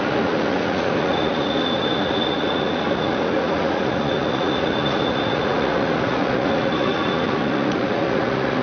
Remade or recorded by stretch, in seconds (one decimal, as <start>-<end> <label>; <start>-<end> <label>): 0.0-8.6 remade